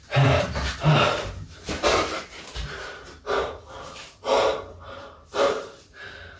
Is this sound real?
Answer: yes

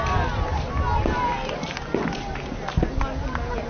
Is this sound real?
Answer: yes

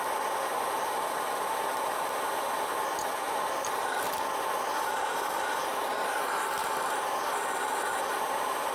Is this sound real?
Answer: yes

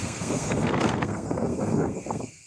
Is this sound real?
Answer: no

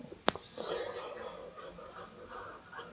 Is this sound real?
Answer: yes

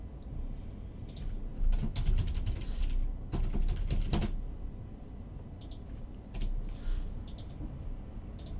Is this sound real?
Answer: yes